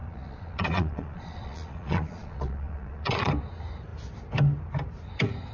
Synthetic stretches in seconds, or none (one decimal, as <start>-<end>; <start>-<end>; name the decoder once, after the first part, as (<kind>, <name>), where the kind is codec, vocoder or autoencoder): 0.0-3.3 (vocoder, Vocos)